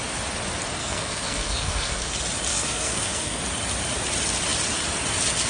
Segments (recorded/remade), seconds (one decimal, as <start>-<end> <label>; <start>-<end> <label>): 0.0-0.8 recorded; 0.8-2.1 remade; 2.1-2.5 recorded; 2.5-3.4 remade; 3.4-5.5 recorded

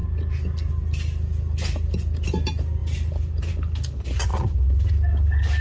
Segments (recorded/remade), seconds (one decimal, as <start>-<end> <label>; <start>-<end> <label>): 0.0-5.6 recorded